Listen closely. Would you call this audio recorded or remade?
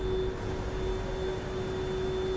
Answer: recorded